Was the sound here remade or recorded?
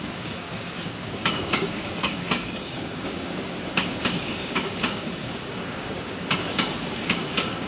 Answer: remade